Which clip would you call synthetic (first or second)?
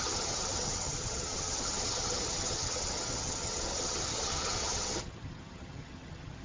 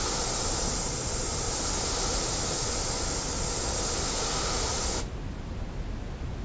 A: first